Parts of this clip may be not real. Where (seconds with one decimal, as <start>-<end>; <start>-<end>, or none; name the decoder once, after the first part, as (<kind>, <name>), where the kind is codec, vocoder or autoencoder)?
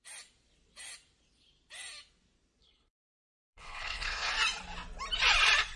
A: 2.6-4.3 (codec, HILCodec)